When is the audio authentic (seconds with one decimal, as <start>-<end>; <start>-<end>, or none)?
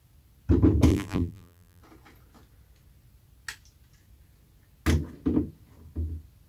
0.0-0.9; 1.8-6.5